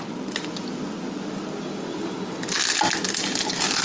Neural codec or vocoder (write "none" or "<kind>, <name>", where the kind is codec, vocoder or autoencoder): none